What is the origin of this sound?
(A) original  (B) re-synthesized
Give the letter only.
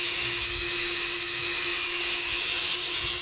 B